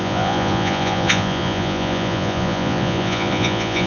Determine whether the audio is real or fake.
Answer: fake